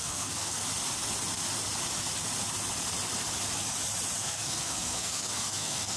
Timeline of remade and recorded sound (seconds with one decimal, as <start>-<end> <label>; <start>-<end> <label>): 0.0-0.6 remade; 0.6-4.2 recorded; 4.2-6.0 remade